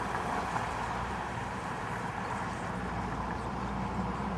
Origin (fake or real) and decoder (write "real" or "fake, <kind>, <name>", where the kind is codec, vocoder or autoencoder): fake, vocoder, BigVGAN v2